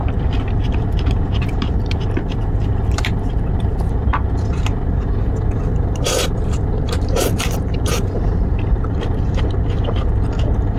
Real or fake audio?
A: fake